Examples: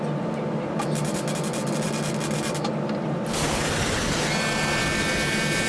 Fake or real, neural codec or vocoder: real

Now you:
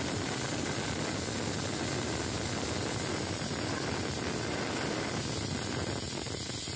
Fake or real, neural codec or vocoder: real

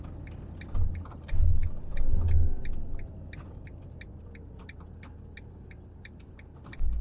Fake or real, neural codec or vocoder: real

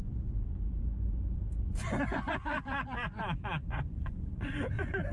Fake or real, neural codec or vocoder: fake, vocoder, Vocos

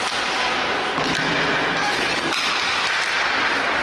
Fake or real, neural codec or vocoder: real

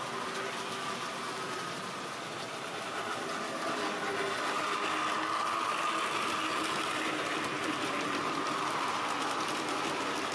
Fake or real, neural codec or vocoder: real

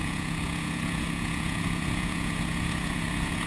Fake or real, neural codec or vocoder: fake, vocoder, Vocos